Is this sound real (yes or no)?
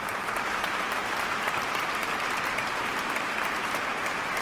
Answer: no